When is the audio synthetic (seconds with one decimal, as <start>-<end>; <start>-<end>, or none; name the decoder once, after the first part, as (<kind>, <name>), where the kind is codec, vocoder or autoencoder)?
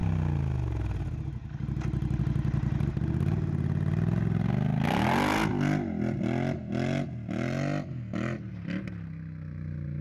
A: none